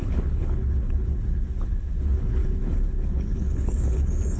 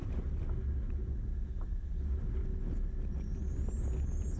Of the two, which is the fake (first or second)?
first